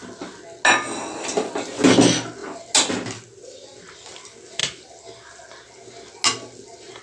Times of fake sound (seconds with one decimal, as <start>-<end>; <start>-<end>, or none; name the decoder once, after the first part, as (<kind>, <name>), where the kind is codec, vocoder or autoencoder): none